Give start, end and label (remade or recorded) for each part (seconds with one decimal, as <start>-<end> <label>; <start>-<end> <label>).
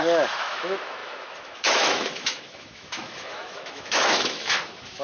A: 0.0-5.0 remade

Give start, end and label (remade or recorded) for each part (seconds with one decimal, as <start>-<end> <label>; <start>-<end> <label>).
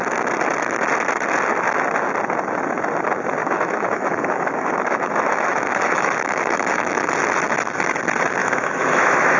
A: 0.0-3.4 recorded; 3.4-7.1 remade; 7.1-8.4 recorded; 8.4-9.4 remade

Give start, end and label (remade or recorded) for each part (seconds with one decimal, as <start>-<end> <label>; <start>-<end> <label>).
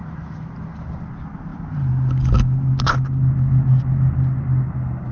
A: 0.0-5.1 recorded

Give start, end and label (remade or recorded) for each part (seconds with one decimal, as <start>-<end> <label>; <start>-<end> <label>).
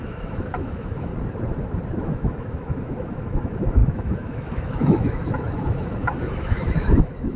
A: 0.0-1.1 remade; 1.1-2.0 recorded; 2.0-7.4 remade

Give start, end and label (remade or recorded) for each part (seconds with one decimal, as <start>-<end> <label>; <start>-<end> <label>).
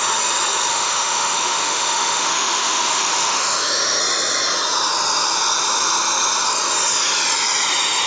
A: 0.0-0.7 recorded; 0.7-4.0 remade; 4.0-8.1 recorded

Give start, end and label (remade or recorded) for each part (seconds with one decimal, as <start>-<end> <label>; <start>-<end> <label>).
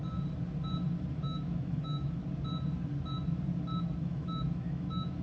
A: 0.0-1.2 recorded; 1.2-2.2 remade; 2.2-4.0 recorded; 4.0-5.2 remade